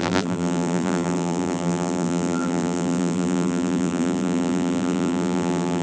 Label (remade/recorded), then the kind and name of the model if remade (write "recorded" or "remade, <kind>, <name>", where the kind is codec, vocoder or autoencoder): remade, vocoder, BigVGAN v2